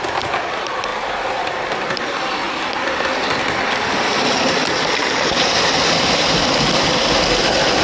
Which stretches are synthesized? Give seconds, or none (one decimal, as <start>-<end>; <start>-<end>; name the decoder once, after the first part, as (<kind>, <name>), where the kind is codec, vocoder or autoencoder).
0.0-7.8 (vocoder, BigVGAN v2)